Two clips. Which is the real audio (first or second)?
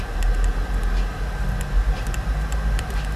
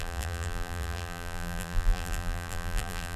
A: first